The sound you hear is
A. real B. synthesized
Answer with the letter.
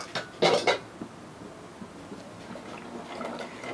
A